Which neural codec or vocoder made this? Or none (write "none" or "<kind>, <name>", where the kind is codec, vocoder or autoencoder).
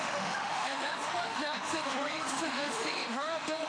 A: autoencoder, DAC-VAE